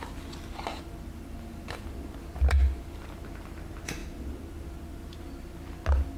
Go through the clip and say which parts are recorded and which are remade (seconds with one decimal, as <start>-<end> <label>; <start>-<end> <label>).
0.0-6.2 recorded